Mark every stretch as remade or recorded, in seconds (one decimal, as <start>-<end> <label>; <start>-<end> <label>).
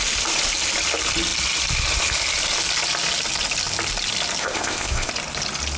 0.0-4.4 recorded; 4.4-5.1 remade; 5.1-5.8 recorded